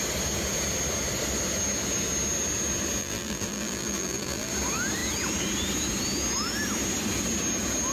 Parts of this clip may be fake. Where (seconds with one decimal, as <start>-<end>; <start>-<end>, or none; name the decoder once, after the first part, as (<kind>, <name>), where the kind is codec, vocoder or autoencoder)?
3.0-4.5 (vocoder, BigVGAN v2)